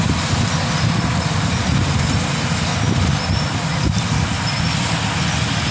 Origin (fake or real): real